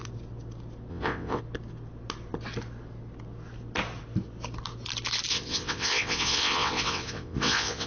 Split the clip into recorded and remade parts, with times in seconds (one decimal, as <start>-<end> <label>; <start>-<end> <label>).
0.0-0.9 recorded; 0.9-1.4 remade; 1.4-5.3 recorded; 5.3-7.9 remade